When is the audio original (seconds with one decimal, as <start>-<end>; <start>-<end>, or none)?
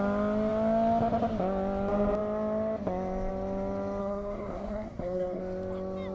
0.0-4.0; 5.4-6.1